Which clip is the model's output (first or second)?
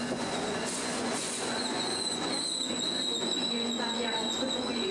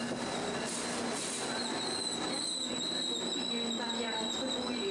first